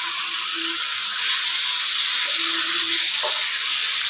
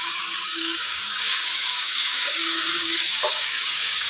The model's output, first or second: second